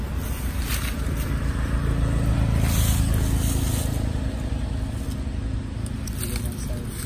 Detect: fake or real real